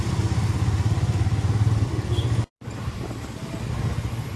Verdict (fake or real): real